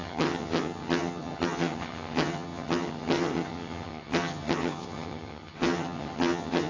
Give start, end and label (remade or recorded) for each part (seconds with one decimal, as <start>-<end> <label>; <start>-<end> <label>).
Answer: 0.0-6.7 remade

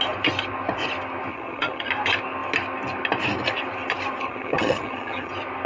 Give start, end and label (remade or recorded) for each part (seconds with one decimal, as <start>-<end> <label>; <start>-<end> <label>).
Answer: 0.0-1.3 recorded; 1.3-1.9 remade; 1.9-4.2 recorded; 4.2-5.3 remade; 5.3-5.7 recorded

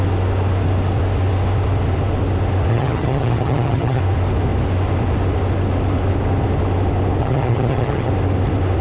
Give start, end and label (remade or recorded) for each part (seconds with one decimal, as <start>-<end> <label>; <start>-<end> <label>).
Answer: 0.0-2.7 recorded; 2.7-4.0 remade; 4.0-7.2 recorded; 7.2-8.1 remade; 8.1-8.8 recorded

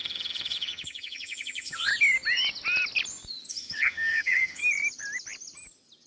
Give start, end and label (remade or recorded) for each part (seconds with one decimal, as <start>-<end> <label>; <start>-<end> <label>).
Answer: 0.0-1.9 remade; 1.9-3.5 recorded; 3.5-4.6 remade; 4.6-6.1 recorded

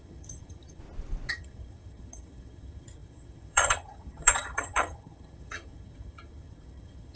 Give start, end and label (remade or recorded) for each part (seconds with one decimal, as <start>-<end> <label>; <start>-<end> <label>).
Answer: 0.0-0.8 remade; 0.8-1.3 recorded; 1.3-7.2 remade

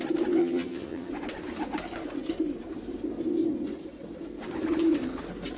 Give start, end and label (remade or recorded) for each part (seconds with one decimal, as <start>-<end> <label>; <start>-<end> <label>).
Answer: 0.0-0.4 recorded; 0.4-1.1 remade; 1.1-5.6 recorded

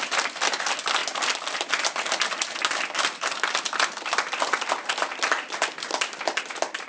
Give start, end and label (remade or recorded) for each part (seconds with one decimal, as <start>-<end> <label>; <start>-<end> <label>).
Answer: 0.0-6.9 recorded

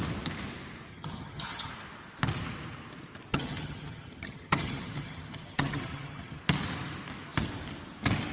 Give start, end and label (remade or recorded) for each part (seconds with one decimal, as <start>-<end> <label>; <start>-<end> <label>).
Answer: 0.0-0.9 recorded; 0.9-1.7 remade; 1.7-3.3 recorded; 3.3-6.4 remade; 6.4-8.3 recorded